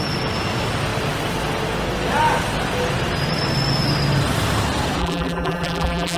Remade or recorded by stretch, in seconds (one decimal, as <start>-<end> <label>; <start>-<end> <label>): 0.0-5.0 recorded; 5.0-6.2 remade